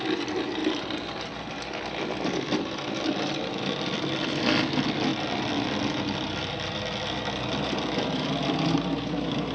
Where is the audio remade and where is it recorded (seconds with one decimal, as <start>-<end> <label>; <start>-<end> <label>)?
0.0-9.5 recorded